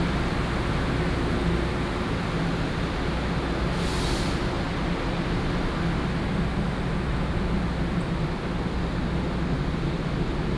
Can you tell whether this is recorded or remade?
recorded